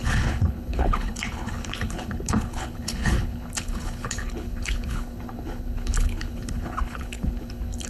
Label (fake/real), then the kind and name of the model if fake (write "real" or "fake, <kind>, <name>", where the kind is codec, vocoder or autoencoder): fake, codec, HILCodec